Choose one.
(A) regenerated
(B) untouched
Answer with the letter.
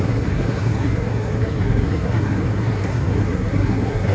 A